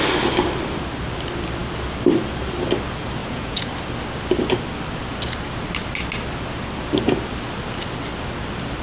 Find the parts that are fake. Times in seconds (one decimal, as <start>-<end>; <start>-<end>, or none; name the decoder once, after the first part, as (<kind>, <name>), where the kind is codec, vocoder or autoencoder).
3.2-3.7 (vocoder, Vocos)